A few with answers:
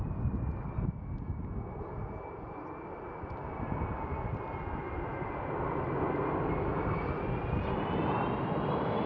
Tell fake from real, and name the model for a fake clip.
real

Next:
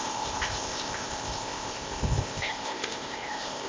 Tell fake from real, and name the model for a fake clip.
fake, codec, ZipCodec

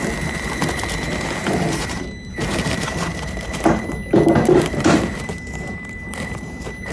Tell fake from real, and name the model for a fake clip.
fake, vocoder, BigVGAN v2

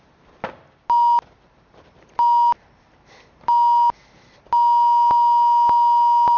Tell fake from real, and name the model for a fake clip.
real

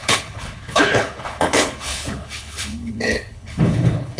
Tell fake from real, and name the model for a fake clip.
fake, codec, HILCodec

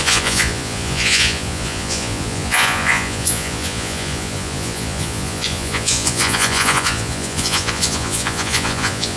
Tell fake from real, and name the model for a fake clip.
fake, vocoder, Vocos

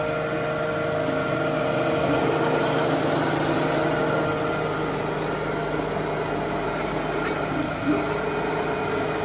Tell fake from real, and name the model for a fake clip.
real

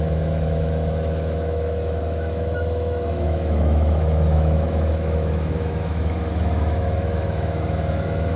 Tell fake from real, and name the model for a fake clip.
fake, autoencoder, DAC-VAE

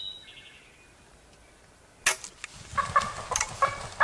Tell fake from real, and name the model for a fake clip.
real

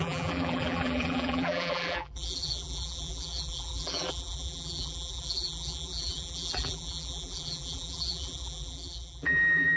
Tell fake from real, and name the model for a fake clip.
fake, vocoder, BigVGAN v2